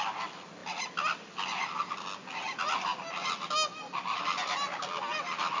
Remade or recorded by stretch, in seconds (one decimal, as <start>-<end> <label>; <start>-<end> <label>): 0.0-5.6 recorded